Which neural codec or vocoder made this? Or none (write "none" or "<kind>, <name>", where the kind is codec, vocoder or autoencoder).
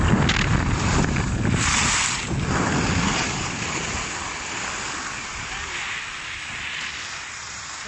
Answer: none